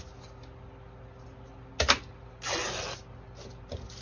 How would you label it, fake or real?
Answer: real